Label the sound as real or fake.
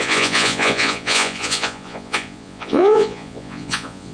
fake